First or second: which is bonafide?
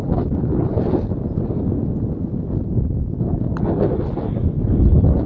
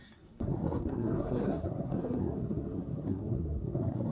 first